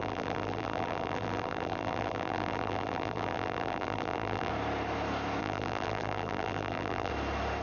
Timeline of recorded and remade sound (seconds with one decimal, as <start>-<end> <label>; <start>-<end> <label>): 0.0-4.5 remade; 4.5-5.4 recorded; 5.4-7.1 remade; 7.1-7.6 recorded